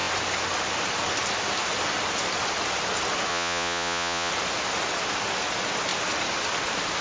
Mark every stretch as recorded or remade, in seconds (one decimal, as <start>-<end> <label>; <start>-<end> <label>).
0.0-3.3 recorded; 3.3-4.3 remade; 4.3-7.0 recorded